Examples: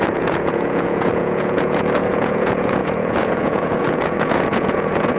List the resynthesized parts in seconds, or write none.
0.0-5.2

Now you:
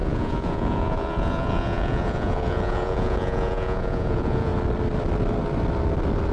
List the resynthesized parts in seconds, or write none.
0.0-4.5

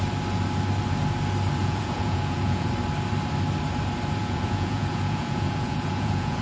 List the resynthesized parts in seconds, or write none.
1.6-2.7; 4.2-6.4

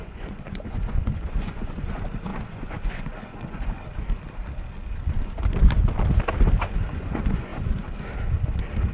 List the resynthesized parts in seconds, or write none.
0.0-3.8; 6.9-7.5